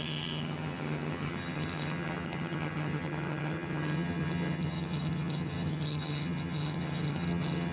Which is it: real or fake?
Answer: fake